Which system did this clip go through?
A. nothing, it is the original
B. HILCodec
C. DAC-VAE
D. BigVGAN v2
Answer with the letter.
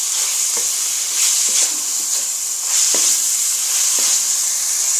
A